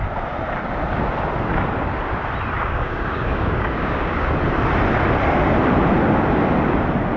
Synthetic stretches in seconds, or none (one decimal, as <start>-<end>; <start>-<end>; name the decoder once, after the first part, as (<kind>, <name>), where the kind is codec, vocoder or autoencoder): 2.6-4.3 (codec, DAC)